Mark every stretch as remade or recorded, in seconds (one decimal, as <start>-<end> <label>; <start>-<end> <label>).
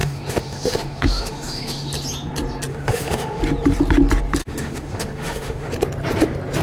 0.0-1.9 remade; 1.9-2.7 recorded; 2.7-3.4 remade; 3.4-4.4 recorded; 4.4-5.7 remade; 5.7-6.6 recorded